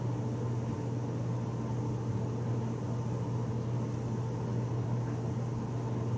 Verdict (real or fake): real